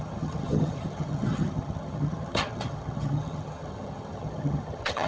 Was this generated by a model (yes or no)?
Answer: yes